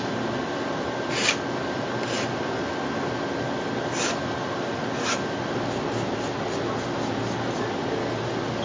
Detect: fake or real real